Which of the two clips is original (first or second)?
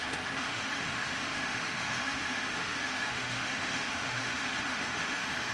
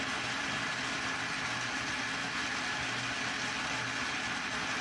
second